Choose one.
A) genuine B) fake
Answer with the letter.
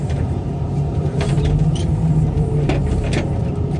B